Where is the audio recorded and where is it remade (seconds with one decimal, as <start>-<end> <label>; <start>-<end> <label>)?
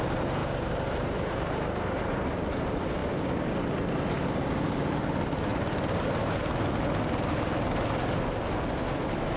0.0-0.4 recorded; 0.4-1.8 remade; 1.8-9.4 recorded